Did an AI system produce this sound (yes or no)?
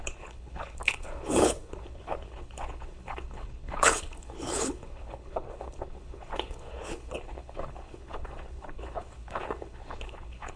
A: yes